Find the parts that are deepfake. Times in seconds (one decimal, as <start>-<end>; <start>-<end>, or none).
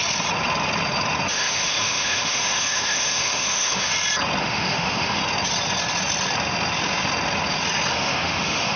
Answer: 1.3-3.9; 4.4-5.2; 7.9-8.8